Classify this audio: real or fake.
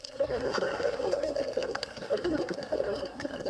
fake